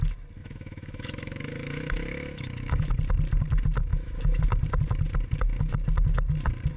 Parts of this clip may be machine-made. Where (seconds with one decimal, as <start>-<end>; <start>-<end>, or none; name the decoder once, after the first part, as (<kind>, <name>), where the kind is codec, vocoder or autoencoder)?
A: 0.4-2.9 (autoencoder, DAC-VAE); 3.9-4.4